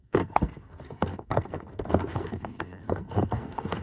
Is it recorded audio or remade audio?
remade